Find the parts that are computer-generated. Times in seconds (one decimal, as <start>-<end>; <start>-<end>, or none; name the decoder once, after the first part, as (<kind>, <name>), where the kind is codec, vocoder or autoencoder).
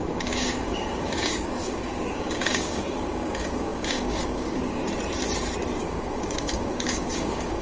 0.0-4.8 (codec, DAC); 5.8-7.6